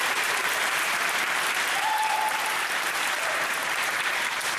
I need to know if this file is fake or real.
fake